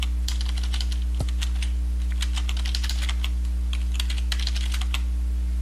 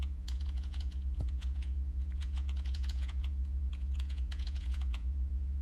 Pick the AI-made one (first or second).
second